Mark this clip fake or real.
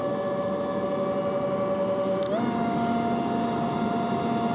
real